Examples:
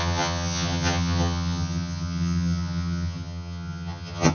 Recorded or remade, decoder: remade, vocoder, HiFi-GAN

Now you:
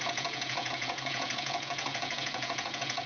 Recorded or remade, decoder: remade, vocoder, Vocos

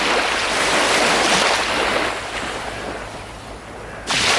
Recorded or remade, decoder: recorded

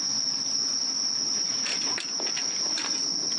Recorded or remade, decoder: recorded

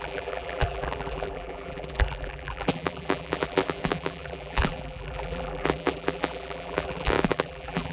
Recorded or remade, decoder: remade, vocoder, BigVGAN v2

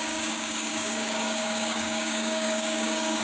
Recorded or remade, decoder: remade, codec, DAC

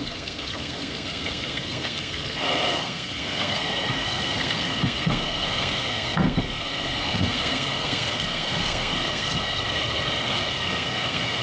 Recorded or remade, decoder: remade, codec, SNAC